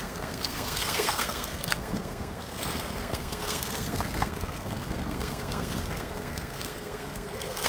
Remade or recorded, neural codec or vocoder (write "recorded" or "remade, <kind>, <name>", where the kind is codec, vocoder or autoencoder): remade, codec, SNAC